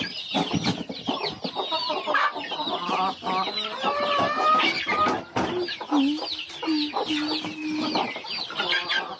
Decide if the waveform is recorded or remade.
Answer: recorded